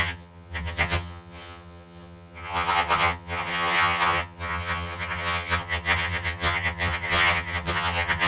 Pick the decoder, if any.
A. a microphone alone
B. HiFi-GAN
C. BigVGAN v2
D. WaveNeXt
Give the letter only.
B